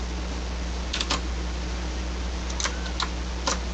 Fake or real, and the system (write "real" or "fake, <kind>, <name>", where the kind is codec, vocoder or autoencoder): real